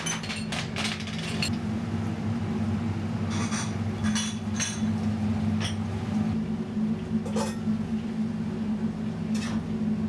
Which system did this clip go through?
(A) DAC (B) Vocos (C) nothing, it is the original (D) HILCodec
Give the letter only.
C